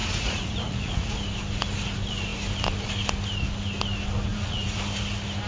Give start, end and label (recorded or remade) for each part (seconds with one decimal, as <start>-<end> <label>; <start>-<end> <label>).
0.0-1.1 remade; 1.1-4.3 recorded; 4.3-4.8 remade; 4.8-5.5 recorded